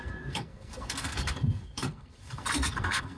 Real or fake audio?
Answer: fake